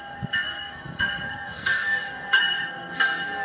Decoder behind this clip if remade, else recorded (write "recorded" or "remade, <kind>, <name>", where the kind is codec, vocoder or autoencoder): remade, codec, SNAC